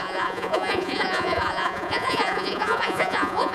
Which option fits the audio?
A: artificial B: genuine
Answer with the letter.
A